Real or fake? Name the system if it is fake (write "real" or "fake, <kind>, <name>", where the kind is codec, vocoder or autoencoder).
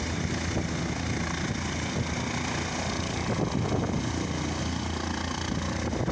real